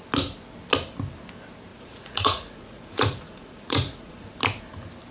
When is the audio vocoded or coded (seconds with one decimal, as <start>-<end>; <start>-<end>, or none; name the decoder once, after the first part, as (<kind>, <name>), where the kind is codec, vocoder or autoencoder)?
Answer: 1.7-4.3 (vocoder, Vocos)